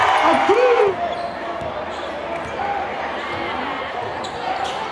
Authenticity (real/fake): real